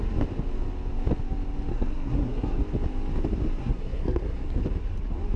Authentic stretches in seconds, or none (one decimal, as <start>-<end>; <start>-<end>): 0.0-1.7; 2.6-3.6; 4.6-5.4